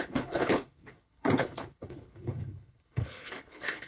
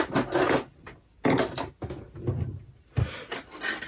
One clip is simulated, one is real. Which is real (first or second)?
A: second